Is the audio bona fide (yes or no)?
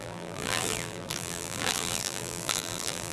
no